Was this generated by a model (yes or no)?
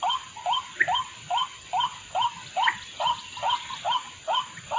no